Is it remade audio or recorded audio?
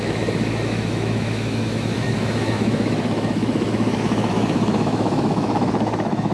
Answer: remade